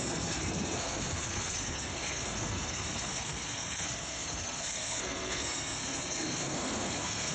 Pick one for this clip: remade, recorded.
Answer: remade